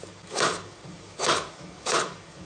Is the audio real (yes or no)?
no